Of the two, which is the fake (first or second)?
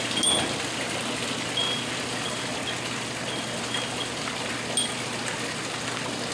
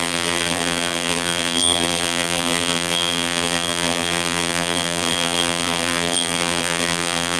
second